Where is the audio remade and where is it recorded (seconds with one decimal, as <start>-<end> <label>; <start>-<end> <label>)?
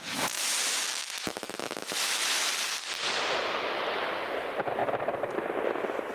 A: 0.0-0.9 recorded; 0.9-2.5 remade; 2.5-6.1 recorded